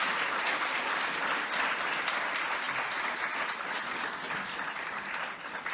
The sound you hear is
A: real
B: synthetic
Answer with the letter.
A